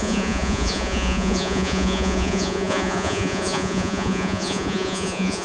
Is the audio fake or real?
fake